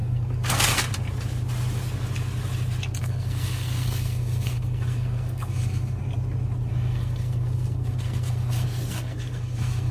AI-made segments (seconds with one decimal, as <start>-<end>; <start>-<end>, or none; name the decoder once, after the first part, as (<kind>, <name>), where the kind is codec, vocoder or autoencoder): 0.0-0.9 (codec, SNAC); 3.0-6.0; 6.7-9.9